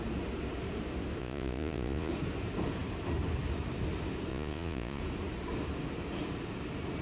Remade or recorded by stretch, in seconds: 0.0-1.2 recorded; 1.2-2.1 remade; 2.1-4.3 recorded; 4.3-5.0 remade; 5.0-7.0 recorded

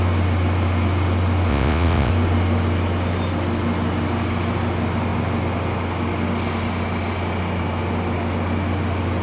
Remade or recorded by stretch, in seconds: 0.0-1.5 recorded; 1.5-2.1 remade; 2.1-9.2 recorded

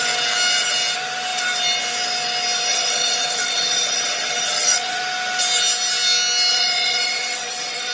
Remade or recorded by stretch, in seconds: 0.0-2.7 recorded; 2.7-5.0 remade; 5.0-6.5 recorded; 6.5-7.9 remade

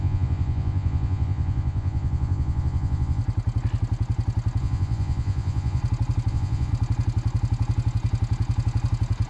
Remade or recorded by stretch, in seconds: 0.0-3.2 remade; 3.2-4.6 recorded; 4.6-5.8 remade; 5.8-6.3 recorded; 6.3-6.7 remade; 6.7-9.3 recorded